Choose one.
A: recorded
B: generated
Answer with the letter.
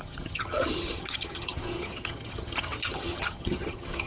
B